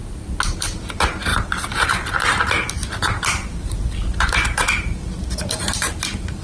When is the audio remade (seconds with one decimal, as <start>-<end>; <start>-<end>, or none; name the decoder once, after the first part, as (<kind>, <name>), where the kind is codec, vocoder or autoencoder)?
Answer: 1.3-5.1 (vocoder, BigVGAN v2); 5.6-6.4